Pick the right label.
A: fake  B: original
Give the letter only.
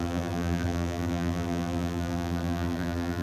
A